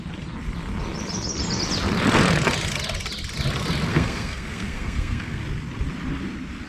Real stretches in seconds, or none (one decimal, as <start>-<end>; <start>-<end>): 0.0-3.9; 5.4-6.7